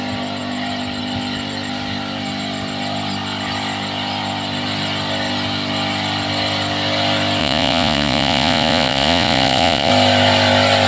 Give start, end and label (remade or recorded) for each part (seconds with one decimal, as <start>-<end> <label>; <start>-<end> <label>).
0.0-7.4 recorded; 7.4-9.9 remade; 9.9-10.9 recorded